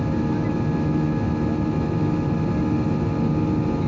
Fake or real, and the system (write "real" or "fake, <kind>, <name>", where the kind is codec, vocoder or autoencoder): real